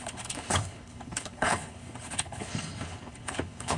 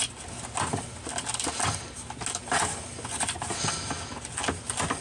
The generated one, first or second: first